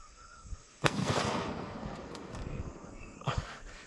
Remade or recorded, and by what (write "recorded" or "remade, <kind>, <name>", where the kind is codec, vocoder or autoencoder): remade, codec, SNAC